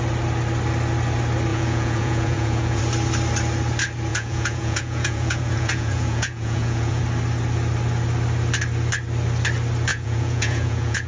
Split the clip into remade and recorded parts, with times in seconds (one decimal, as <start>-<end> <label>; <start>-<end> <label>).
0.0-1.5 recorded; 1.5-2.8 remade; 2.8-4.1 recorded; 4.1-7.0 remade; 7.0-9.9 recorded; 9.9-11.1 remade